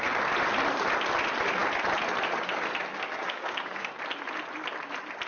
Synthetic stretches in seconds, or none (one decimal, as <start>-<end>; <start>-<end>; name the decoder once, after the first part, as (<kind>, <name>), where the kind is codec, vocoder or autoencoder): 2.9-3.9 (codec, DAC)